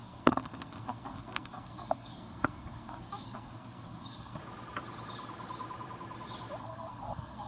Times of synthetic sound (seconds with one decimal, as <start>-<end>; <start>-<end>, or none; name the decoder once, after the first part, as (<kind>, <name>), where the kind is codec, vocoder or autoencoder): 0.0-4.4 (codec, SNAC); 6.6-7.5